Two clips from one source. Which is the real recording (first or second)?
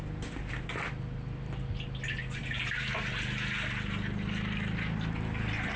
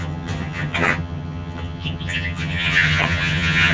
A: first